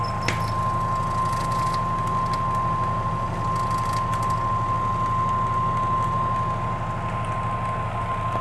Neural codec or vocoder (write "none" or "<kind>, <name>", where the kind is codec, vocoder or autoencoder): none